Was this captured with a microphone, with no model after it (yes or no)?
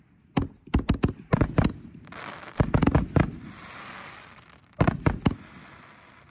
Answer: yes